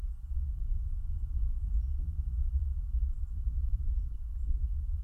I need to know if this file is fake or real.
real